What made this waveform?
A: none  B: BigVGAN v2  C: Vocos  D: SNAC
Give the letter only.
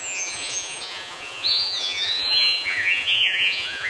C